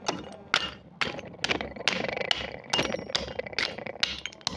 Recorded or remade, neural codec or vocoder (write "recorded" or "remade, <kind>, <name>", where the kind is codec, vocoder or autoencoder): recorded